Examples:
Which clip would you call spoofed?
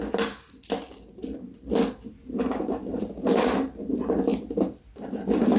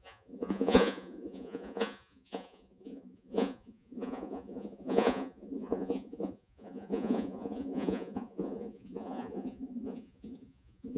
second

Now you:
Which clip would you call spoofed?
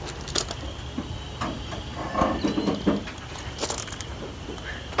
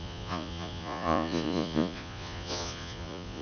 second